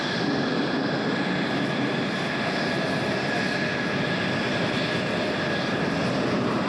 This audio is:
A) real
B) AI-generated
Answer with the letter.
A